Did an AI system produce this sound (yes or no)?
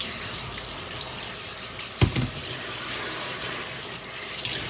no